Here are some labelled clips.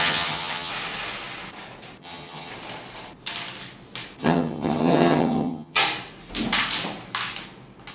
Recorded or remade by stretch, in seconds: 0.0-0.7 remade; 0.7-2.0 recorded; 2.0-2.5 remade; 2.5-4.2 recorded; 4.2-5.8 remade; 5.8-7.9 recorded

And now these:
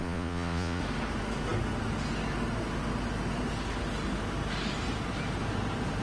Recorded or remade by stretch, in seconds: 0.0-0.8 remade; 0.8-6.0 recorded

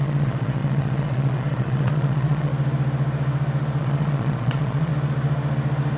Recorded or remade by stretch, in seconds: 0.0-2.5 remade; 2.5-3.8 recorded; 3.8-4.9 remade; 4.9-6.0 recorded

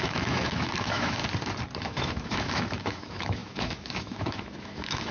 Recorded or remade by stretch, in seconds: 0.0-1.2 remade; 1.2-1.8 recorded; 1.8-5.1 remade

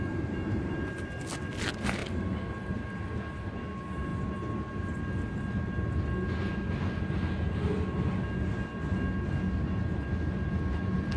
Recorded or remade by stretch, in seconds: 0.0-11.2 recorded

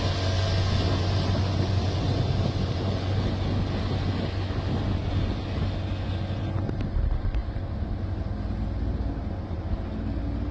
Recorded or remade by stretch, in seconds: 0.0-10.5 recorded